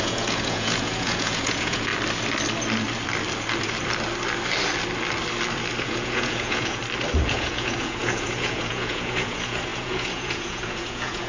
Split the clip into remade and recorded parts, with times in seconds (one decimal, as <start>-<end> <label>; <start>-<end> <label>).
0.0-1.9 remade; 1.9-5.8 recorded; 5.8-6.8 remade; 6.8-7.3 recorded; 7.3-11.3 remade